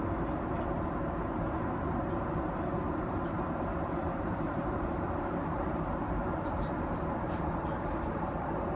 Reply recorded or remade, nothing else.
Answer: remade